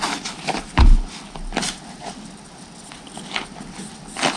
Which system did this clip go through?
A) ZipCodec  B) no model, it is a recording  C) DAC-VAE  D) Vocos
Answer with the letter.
B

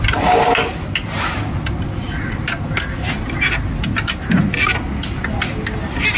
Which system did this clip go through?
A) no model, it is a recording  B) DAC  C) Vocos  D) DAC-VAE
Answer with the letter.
A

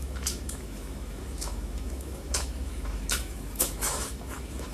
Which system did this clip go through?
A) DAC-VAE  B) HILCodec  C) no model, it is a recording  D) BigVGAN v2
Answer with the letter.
A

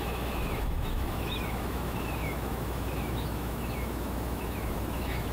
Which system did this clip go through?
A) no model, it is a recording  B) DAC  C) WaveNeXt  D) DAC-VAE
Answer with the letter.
D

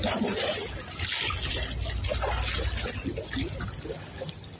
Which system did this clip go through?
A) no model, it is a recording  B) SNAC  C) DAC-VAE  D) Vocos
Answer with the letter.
A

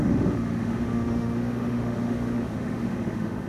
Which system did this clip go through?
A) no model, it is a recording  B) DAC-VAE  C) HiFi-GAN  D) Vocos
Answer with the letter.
B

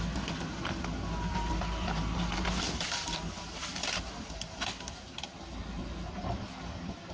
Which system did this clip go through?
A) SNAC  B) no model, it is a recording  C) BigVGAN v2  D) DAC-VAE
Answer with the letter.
B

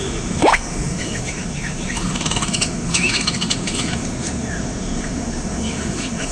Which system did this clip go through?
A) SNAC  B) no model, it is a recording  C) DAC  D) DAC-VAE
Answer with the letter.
D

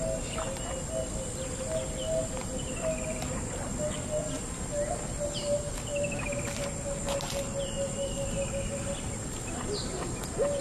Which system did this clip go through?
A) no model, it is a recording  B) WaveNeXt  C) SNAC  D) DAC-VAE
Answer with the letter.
A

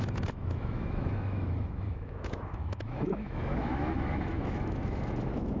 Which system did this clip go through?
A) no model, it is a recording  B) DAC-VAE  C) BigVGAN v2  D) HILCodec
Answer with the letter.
B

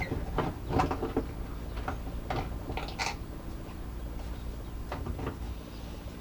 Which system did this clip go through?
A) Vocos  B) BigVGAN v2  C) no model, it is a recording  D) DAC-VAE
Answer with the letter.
C